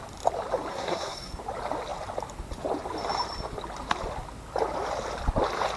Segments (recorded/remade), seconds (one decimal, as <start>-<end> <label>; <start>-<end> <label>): 0.0-0.7 recorded; 0.7-1.3 remade; 1.3-5.8 recorded